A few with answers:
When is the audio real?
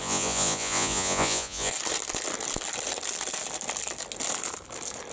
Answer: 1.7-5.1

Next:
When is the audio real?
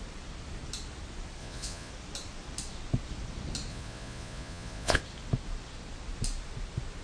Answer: 0.0-1.4; 1.9-3.7; 5.0-7.0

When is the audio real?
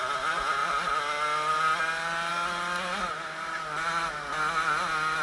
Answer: 0.0-5.2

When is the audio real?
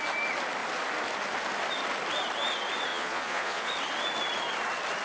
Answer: 0.0-2.9; 3.7-5.0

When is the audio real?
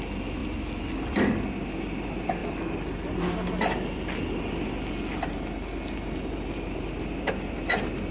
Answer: 0.0-8.1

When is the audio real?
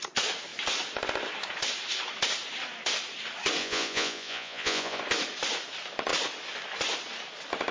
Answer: 0.0-3.6; 5.0-7.7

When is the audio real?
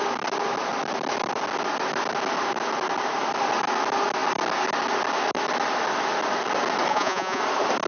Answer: 0.0-6.9; 7.4-7.9